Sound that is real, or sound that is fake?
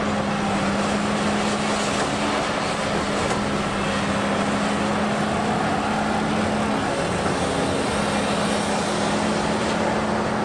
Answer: real